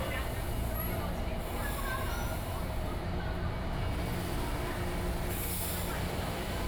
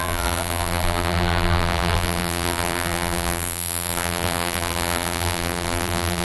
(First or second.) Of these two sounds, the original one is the first